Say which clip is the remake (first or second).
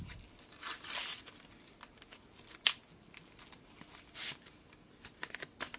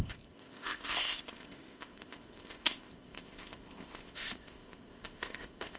second